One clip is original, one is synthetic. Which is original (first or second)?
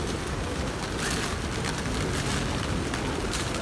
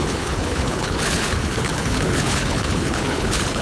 first